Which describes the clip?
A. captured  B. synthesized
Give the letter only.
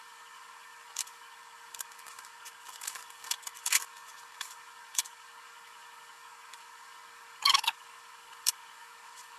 B